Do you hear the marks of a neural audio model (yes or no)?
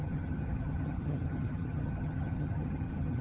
yes